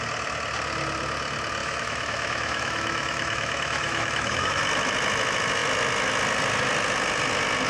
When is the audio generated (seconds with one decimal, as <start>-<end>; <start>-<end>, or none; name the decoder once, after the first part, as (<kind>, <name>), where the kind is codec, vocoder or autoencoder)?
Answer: 1.6-4.6 (autoencoder, DAC-VAE)